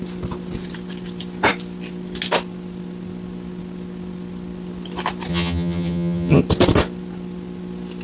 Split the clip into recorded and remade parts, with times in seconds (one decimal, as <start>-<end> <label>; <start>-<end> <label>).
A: 0.0-5.3 recorded; 5.3-6.4 remade; 6.4-8.0 recorded